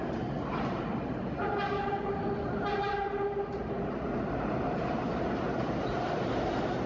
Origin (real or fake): real